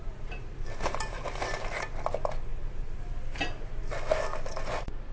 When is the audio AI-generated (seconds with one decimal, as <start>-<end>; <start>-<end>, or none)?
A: none